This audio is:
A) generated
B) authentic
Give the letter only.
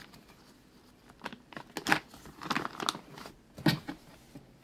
B